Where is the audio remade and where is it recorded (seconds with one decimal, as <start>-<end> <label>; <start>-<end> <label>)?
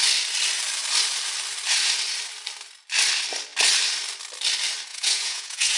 0.0-4.9 recorded; 4.9-5.8 remade